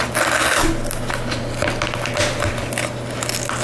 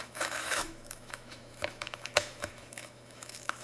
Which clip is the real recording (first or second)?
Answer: first